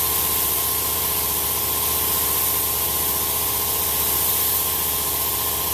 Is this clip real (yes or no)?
yes